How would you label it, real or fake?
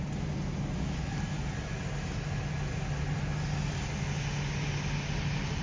real